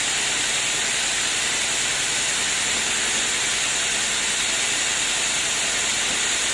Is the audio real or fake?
real